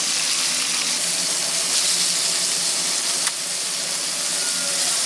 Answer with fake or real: real